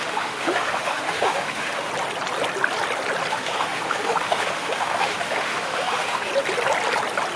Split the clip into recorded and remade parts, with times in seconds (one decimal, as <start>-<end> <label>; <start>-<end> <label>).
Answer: 0.0-1.9 remade; 1.9-3.3 recorded; 3.3-6.3 remade; 6.3-7.4 recorded